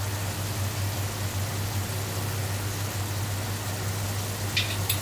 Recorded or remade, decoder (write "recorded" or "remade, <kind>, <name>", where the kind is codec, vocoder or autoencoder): recorded